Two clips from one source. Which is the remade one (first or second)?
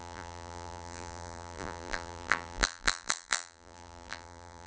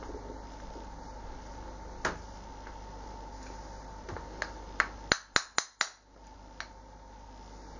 first